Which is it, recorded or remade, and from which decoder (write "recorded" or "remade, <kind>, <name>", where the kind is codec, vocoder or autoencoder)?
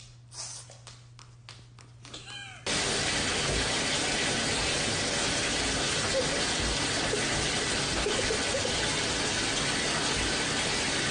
recorded